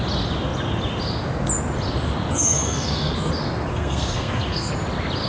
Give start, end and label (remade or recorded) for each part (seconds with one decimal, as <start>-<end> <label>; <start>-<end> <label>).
0.0-2.3 recorded; 2.3-3.3 remade; 3.3-3.7 recorded; 3.7-4.7 remade; 4.7-5.3 recorded